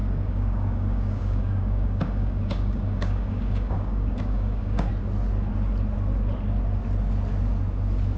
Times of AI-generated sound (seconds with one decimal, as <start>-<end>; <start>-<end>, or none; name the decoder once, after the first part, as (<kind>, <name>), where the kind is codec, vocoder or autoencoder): 0.0-4.9 (codec, DAC)